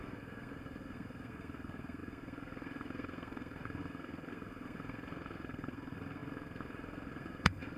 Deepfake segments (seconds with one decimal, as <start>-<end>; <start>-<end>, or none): 0.0-7.8